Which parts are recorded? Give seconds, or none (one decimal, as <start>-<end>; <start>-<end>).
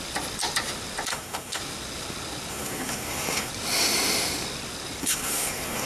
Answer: 0.0-1.1; 1.6-2.5; 3.5-5.0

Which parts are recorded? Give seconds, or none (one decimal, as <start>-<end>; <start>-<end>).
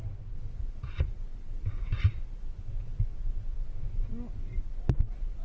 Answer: 0.0-5.4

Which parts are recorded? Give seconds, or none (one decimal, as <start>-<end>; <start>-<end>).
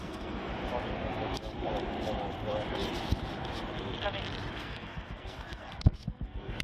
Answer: 0.5-4.5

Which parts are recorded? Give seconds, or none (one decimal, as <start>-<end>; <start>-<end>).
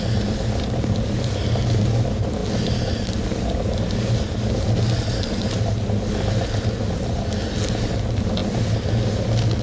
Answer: 0.0-9.6